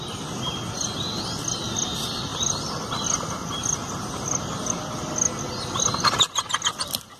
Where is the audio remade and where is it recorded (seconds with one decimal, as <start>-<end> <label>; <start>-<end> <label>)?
0.0-7.2 recorded